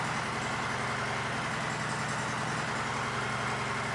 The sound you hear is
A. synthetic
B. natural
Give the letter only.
B